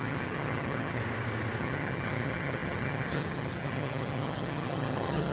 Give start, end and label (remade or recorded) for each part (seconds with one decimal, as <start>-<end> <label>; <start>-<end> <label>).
0.0-1.0 remade; 1.0-1.6 recorded; 1.6-5.3 remade